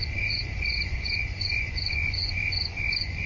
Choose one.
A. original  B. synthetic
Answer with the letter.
B